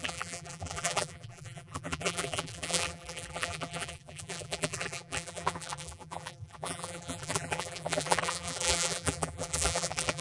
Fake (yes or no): yes